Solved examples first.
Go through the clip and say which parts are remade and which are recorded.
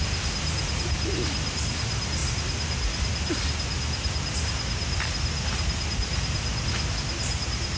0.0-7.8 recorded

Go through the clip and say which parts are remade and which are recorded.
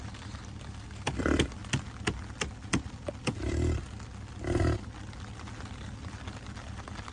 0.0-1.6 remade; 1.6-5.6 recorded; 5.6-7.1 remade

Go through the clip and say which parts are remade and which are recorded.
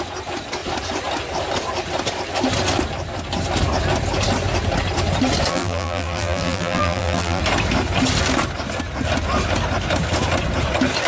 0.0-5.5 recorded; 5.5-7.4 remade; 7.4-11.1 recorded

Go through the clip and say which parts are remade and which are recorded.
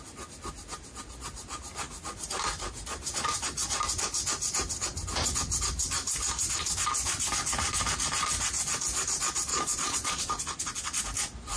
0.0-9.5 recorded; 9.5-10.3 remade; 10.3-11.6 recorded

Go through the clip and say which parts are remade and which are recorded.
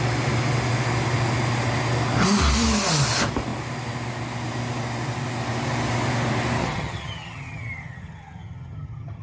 0.0-6.6 recorded; 6.6-9.2 remade